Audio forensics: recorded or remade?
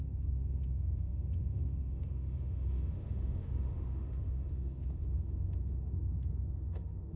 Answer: remade